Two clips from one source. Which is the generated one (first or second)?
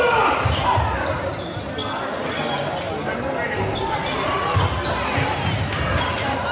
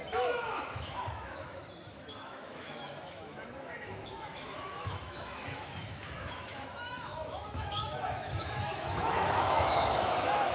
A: second